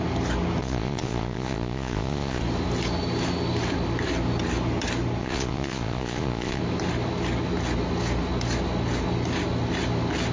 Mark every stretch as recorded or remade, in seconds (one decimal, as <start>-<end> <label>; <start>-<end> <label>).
0.0-0.6 recorded; 0.6-2.4 remade; 2.4-5.2 recorded; 5.2-6.6 remade; 6.6-10.3 recorded